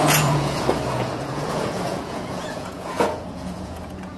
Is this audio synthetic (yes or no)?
yes